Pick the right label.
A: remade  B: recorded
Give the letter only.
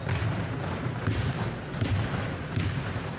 B